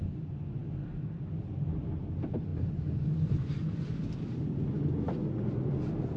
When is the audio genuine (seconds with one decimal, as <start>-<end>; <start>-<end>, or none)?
0.0-6.2